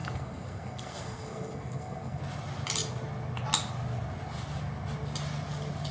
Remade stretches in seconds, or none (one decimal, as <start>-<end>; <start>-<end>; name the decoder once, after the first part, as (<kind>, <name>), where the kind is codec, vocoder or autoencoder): 0.0-2.2 (codec, SNAC)